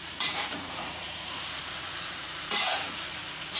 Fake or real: fake